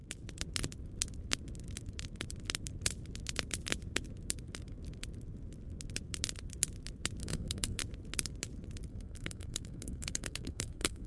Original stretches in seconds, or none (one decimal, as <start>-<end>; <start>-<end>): 0.0-7.2; 7.8-8.9